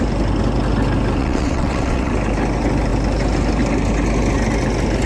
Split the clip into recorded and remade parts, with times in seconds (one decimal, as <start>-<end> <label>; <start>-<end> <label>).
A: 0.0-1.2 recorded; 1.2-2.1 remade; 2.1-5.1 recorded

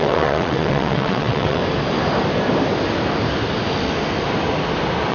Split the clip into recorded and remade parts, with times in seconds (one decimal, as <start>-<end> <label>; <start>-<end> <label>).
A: 0.0-1.6 remade; 1.6-5.1 recorded

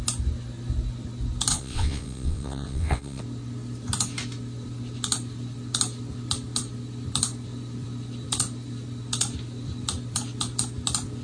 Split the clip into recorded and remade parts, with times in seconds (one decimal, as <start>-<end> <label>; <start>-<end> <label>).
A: 0.0-1.5 recorded; 1.5-3.2 remade; 3.2-11.2 recorded